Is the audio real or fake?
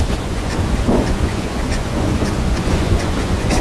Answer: fake